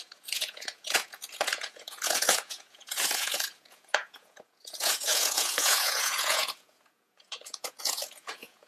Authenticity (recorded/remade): remade